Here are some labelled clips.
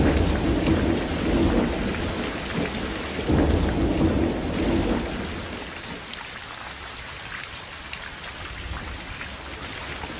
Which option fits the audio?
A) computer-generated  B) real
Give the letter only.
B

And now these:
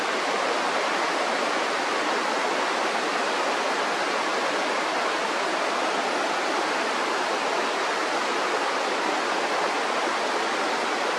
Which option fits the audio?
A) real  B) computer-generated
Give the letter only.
A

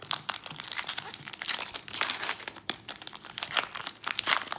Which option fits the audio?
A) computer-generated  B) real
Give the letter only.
A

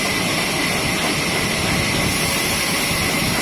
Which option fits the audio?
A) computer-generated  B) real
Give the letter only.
B